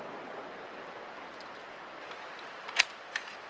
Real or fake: real